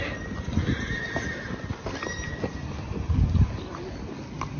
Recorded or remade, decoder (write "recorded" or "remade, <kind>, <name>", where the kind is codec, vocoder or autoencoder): recorded